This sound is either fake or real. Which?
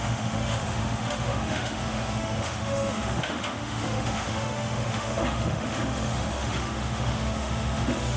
fake